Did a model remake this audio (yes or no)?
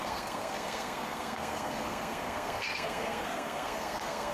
yes